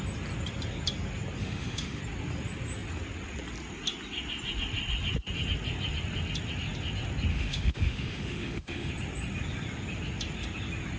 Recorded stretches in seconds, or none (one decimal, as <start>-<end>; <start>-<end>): 0.0-1.4; 2.0-7.3; 8.9-11.0